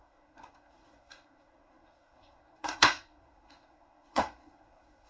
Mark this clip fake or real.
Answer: fake